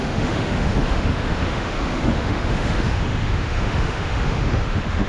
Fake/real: fake